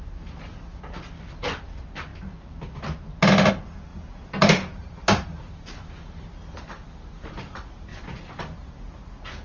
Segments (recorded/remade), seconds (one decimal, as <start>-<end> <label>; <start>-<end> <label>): 0.0-3.9 recorded; 3.9-5.6 remade; 5.6-7.9 recorded; 7.9-8.7 remade; 8.7-9.4 recorded